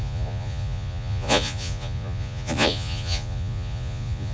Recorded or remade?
remade